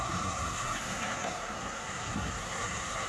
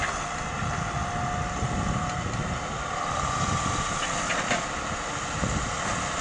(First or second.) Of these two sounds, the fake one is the first